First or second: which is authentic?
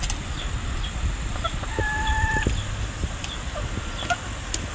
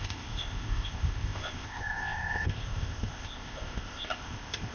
first